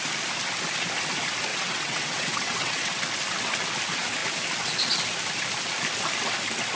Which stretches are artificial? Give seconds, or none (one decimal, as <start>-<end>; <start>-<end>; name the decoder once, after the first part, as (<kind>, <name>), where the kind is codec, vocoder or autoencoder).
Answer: 1.5-3.0 (vocoder, WaveNeXt)